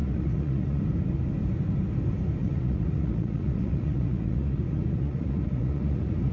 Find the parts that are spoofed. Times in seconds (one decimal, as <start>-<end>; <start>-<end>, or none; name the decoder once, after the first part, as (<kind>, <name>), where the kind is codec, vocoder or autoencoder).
0.0-0.8 (vocoder, Vocos); 2.4-6.3